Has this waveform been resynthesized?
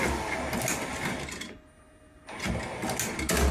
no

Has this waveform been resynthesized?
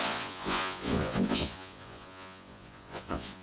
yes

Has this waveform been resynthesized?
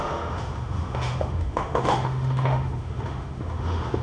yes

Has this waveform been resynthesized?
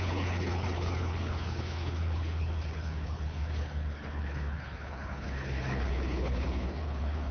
yes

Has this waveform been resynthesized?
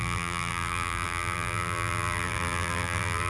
yes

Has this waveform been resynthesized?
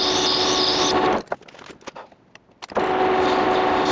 no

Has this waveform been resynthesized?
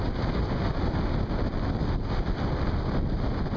no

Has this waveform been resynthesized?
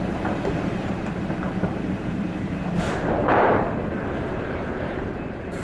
yes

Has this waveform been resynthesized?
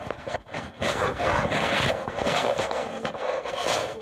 yes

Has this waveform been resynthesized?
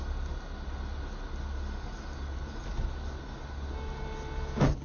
no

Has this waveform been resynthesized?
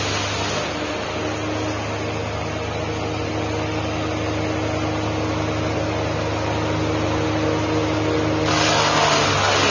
no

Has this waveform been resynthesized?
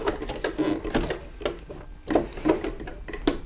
no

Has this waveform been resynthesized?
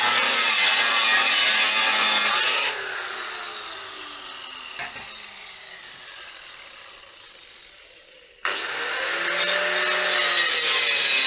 no